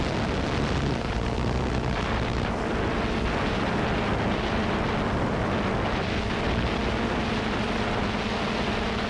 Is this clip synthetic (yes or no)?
no